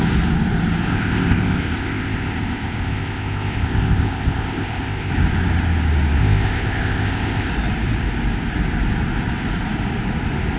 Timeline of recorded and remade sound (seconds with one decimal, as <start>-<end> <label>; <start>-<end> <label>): 0.0-0.9 recorded; 0.9-5.1 remade; 5.1-6.2 recorded; 6.2-7.5 remade; 7.5-10.6 recorded